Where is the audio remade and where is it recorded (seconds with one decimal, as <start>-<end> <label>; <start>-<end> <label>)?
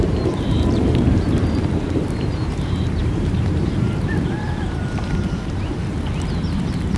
0.0-5.8 remade; 5.8-7.0 recorded